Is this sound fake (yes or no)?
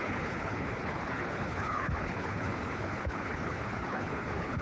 yes